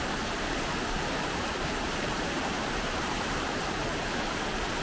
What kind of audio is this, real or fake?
fake